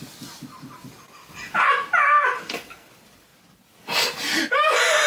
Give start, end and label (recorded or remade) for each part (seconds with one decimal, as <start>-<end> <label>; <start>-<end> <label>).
0.0-2.4 recorded; 2.4-2.9 remade; 2.9-5.1 recorded